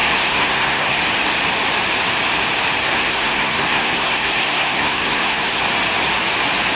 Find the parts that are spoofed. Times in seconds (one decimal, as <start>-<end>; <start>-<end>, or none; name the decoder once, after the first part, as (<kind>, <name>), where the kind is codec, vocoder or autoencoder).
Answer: 0.0-1.0 (codec, SNAC); 2.8-5.6